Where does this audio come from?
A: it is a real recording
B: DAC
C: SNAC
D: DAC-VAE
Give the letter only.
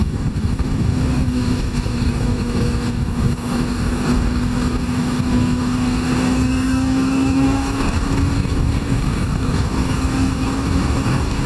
B